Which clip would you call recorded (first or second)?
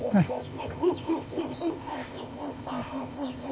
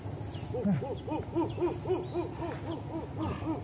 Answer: second